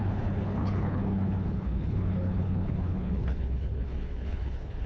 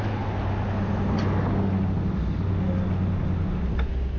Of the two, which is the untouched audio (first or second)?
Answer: second